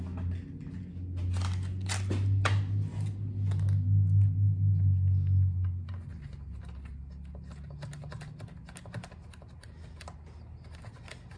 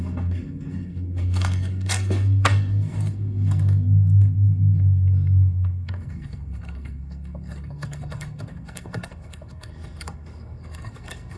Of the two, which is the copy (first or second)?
second